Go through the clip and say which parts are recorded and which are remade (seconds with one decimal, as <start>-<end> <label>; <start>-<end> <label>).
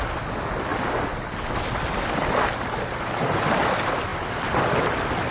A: 0.0-5.3 recorded